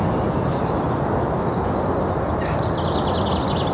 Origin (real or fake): real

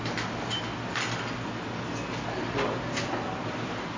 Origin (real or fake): real